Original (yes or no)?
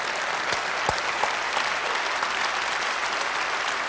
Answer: yes